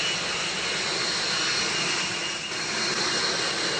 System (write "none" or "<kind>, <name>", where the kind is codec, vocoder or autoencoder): none